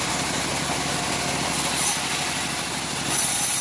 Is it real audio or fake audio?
real